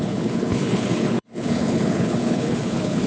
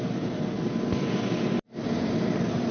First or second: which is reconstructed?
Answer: first